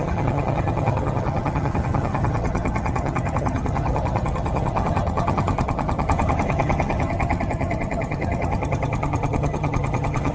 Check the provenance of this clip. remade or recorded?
remade